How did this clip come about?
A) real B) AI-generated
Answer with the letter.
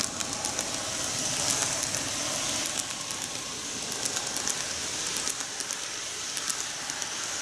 A